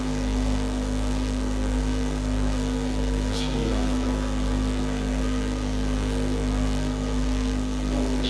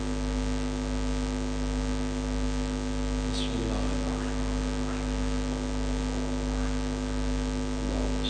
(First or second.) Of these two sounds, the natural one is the second